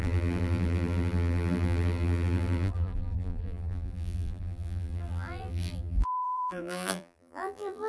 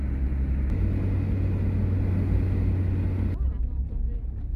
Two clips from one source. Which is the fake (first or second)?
first